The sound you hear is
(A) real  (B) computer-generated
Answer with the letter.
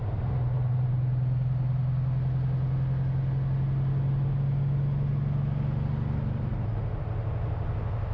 A